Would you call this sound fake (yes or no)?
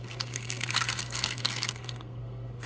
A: yes